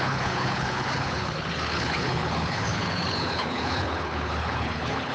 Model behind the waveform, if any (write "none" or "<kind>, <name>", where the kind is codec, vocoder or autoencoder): codec, HILCodec